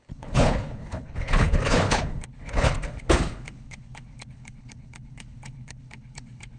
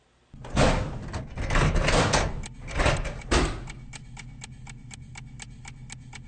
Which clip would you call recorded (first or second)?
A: second